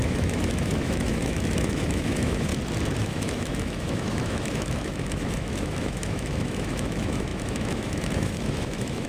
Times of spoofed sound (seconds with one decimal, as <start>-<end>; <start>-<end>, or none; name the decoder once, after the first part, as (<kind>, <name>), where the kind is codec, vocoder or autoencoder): 0.0-2.5 (autoencoder, DAC-VAE); 3.0-9.1